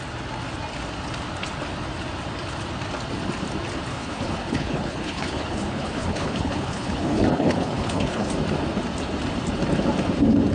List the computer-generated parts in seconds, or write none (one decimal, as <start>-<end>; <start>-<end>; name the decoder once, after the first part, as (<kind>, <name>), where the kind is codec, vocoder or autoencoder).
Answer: 3.9-8.3 (codec, HILCodec)